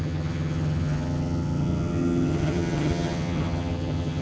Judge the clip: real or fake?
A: fake